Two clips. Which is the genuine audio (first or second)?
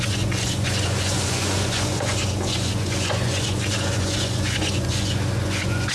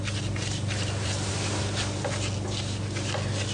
second